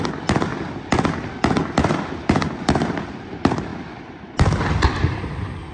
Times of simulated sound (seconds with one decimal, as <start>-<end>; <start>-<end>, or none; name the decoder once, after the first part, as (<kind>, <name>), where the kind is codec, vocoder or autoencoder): 0.0-0.5 (vocoder, BigVGAN v2); 2.3-5.7